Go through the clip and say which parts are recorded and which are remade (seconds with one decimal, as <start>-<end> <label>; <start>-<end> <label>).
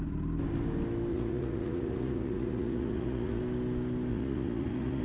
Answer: 0.0-1.1 recorded; 1.1-3.4 remade; 3.4-4.1 recorded; 4.1-5.0 remade